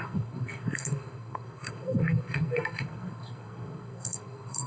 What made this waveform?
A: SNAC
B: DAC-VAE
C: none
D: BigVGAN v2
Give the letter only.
A